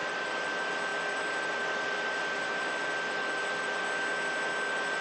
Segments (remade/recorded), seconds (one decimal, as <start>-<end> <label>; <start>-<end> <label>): 0.0-0.5 remade; 0.5-0.9 recorded; 0.9-3.8 remade; 3.8-5.0 recorded